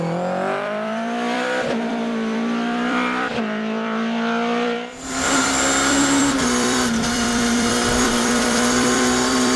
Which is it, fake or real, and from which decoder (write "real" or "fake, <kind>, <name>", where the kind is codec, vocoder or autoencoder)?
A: fake, vocoder, BigVGAN v2